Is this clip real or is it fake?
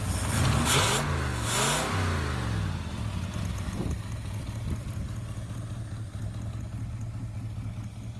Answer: real